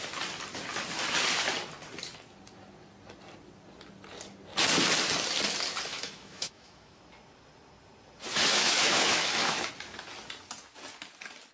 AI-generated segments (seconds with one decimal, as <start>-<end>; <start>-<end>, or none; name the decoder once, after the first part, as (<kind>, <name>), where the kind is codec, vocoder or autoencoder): 5.9-7.0 (autoencoder, DAC-VAE); 8.5-9.7